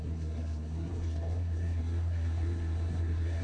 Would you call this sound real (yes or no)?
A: no